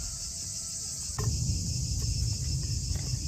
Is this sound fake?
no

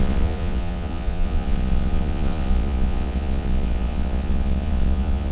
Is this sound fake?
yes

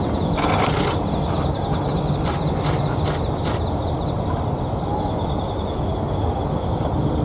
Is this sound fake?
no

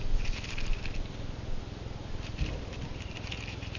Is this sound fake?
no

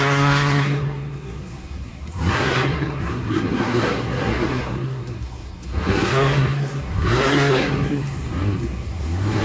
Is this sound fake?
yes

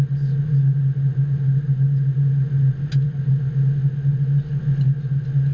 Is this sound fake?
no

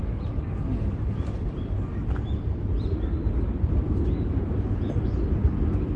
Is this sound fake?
no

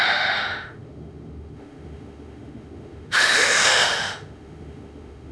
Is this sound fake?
yes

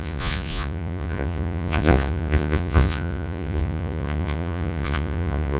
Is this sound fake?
yes